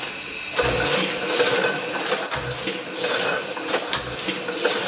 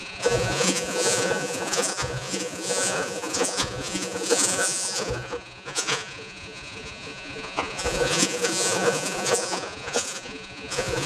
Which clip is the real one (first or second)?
first